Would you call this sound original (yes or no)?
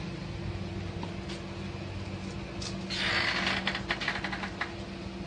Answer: yes